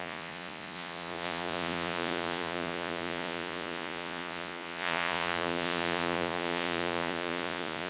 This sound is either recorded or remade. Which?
remade